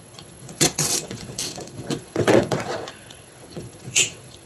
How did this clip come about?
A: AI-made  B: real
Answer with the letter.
A